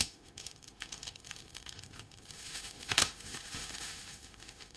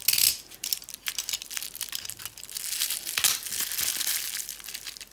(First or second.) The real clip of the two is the second